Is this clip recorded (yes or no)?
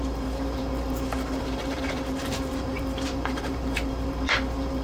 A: no